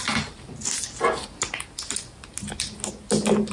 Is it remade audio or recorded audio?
recorded